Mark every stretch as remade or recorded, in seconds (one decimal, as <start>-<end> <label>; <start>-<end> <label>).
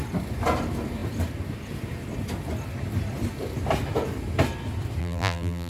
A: 0.0-5.0 recorded; 5.0-5.7 remade